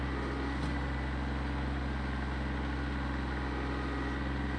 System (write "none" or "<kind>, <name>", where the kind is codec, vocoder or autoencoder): none